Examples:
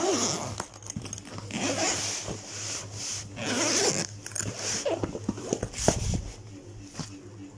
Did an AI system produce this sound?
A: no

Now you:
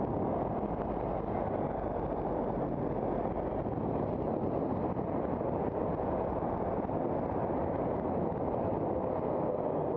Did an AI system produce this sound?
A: no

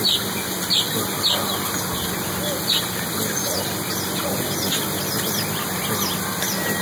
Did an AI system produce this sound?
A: no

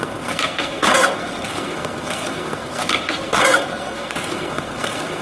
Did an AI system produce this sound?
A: yes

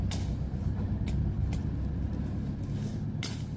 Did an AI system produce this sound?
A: no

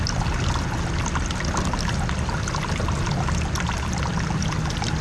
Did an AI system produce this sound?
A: no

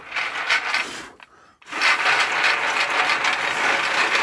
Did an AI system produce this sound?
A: no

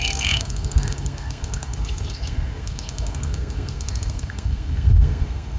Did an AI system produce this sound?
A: yes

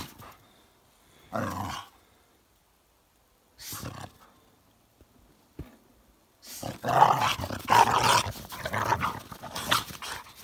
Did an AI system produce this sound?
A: no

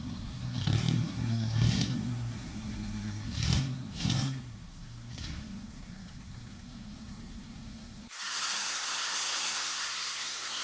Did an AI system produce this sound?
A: yes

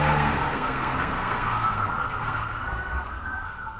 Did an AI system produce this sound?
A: yes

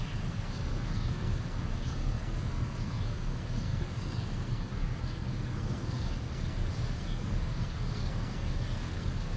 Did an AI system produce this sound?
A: yes